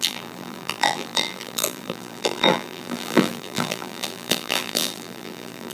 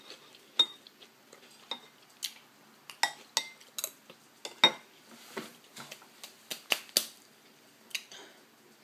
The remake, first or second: first